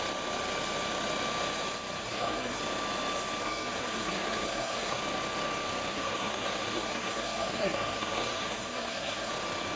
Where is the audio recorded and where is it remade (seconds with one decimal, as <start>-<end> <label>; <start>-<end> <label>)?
0.0-2.0 recorded; 2.0-2.6 remade; 2.6-3.4 recorded; 3.4-5.0 remade; 5.0-5.9 recorded; 5.9-9.3 remade; 9.3-9.8 recorded